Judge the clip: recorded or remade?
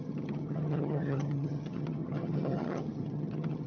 remade